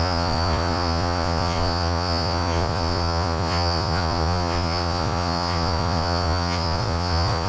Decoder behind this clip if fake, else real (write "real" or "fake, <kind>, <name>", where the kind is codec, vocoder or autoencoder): fake, vocoder, Vocos